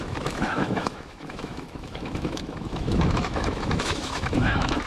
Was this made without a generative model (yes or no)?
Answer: no